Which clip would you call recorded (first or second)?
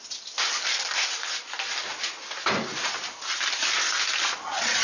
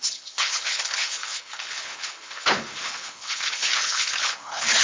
first